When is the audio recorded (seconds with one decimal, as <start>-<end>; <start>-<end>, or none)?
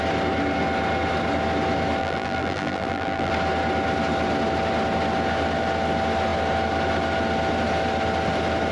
0.0-2.0; 3.3-8.7